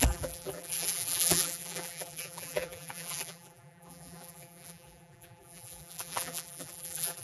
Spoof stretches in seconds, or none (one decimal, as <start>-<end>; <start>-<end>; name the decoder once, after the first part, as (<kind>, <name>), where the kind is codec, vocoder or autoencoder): 0.0-7.2 (vocoder, BigVGAN v2)